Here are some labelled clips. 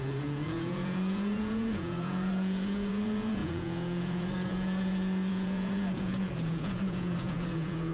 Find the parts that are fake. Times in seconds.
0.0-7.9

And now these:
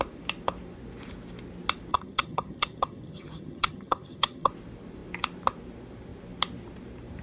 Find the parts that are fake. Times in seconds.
1.9-4.5

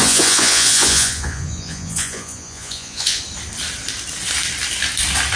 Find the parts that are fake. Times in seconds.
0.0-3.2

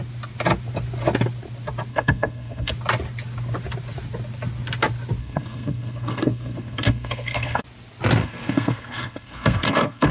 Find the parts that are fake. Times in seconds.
1.9-2.7; 5.2-7.6; 8.2-10.1

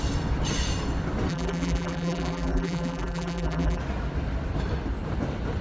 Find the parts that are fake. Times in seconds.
1.3-3.8

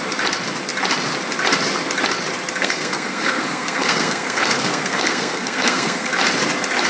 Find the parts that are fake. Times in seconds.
2.6-6.1